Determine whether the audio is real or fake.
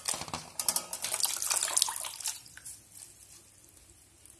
real